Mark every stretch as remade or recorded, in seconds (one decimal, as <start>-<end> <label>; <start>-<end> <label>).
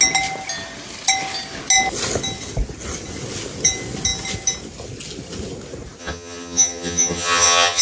0.0-6.0 recorded; 6.0-7.8 remade